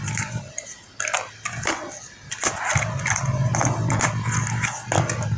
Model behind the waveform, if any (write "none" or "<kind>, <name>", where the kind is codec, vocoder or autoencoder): none